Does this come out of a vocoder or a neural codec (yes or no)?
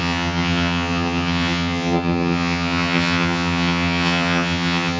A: yes